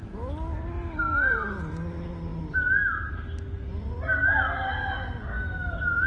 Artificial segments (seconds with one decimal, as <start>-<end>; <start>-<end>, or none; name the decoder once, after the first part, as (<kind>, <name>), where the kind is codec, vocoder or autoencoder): none